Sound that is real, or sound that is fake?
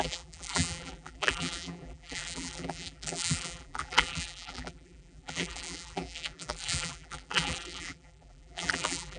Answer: fake